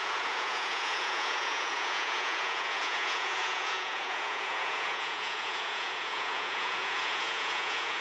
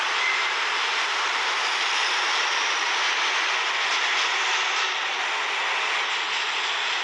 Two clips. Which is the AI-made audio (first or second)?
first